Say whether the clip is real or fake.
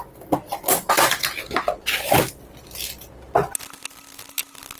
real